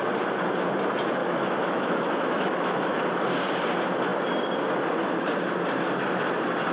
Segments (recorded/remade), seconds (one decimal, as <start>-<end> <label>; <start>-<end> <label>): 0.0-1.2 recorded; 1.2-3.0 remade; 3.0-6.7 recorded